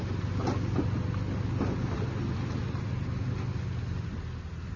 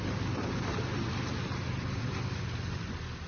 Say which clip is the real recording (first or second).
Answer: first